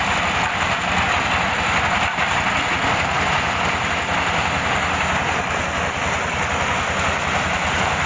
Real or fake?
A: real